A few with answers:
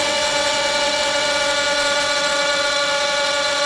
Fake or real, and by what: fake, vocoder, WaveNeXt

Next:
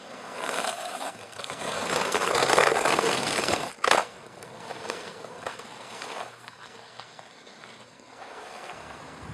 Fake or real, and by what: fake, codec, SNAC